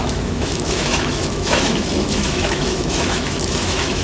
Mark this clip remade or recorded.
remade